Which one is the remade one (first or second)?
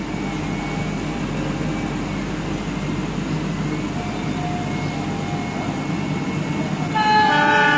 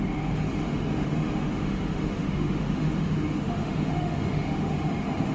second